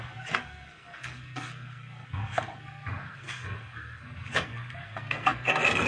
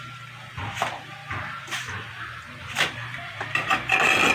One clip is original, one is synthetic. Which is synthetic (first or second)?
first